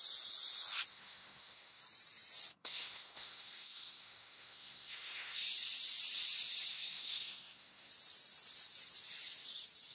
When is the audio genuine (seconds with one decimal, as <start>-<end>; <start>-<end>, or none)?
0.0-0.9; 1.8-2.5; 5.4-6.7; 7.9-9.9